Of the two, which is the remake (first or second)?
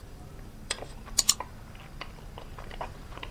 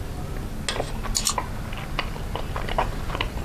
first